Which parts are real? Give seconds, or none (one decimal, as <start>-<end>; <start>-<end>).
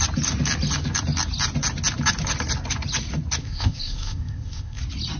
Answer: 0.0-3.4; 4.8-5.2